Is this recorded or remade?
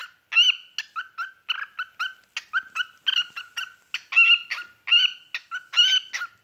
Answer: recorded